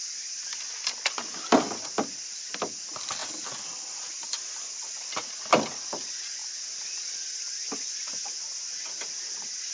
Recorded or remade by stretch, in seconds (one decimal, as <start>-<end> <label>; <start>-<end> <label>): 0.0-9.7 recorded